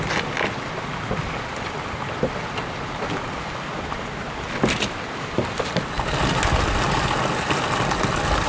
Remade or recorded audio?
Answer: recorded